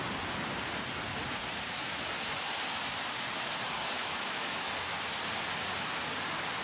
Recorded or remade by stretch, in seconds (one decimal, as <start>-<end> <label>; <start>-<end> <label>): 0.0-4.0 recorded; 4.0-4.7 remade; 4.7-6.6 recorded